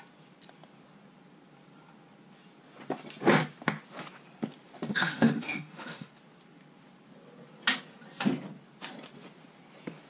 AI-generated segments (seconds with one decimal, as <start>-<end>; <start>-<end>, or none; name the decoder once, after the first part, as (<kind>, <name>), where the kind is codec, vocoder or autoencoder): 4.9-6.1 (autoencoder, DAC-VAE)